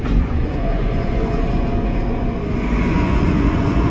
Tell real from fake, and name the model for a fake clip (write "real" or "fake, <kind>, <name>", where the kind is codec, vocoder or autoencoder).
fake, vocoder, Vocos